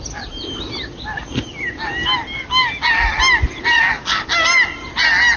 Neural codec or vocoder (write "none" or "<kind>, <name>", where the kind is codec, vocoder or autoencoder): none